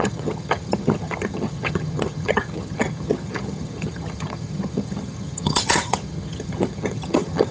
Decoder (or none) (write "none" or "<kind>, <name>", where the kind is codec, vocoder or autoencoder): vocoder, HiFi-GAN